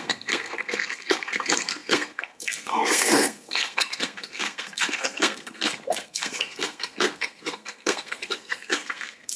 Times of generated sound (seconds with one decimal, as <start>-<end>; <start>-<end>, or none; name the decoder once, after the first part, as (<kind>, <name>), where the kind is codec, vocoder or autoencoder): 0.0-9.4 (codec, SNAC)